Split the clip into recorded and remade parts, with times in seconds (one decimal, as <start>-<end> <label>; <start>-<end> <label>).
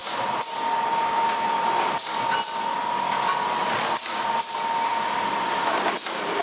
0.0-6.4 recorded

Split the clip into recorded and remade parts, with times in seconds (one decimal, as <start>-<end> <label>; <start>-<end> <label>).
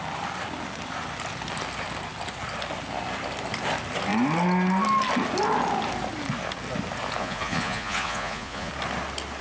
0.0-7.2 recorded; 7.2-8.7 remade; 8.7-9.4 recorded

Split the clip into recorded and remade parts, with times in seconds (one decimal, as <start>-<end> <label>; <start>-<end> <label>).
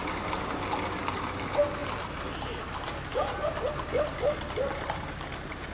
0.0-5.7 recorded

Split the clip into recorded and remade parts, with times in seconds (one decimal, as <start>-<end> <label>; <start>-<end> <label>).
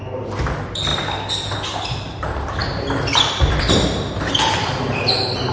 0.0-0.9 remade; 0.9-2.2 recorded; 2.2-5.5 remade